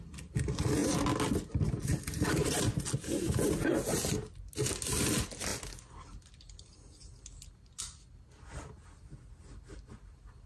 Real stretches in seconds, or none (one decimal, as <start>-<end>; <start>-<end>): 0.0-10.5